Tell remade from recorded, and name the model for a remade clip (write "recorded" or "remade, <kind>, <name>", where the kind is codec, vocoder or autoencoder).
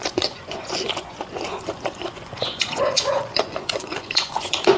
remade, vocoder, Vocos